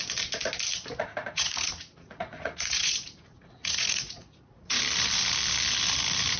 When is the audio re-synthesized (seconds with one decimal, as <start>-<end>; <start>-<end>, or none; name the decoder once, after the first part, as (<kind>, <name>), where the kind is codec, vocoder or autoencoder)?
1.0-4.8 (vocoder, Vocos)